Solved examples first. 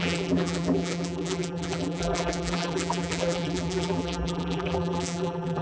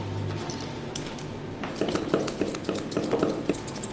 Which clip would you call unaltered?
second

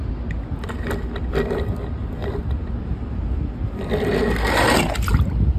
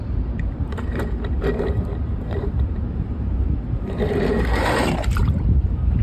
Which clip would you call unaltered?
first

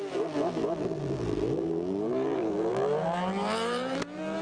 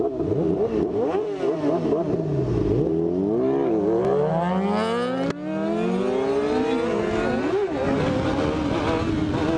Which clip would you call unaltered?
second